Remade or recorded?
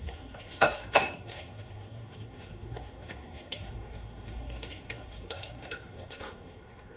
remade